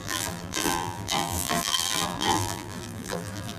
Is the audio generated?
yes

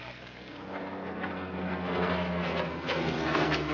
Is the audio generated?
yes